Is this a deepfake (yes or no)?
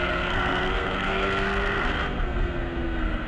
yes